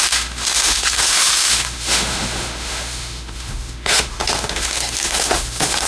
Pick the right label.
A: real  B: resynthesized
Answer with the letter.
B